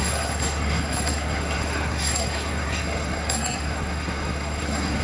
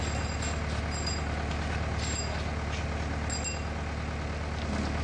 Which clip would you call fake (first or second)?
first